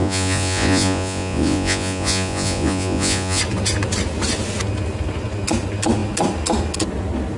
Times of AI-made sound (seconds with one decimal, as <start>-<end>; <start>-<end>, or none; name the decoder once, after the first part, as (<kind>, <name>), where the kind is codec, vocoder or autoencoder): 0.0-3.4 (vocoder, Vocos)